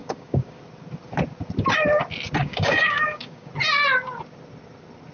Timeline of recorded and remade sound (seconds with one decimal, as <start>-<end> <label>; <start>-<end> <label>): 0.0-0.6 remade; 0.6-2.4 recorded; 2.4-3.5 remade; 3.5-5.1 recorded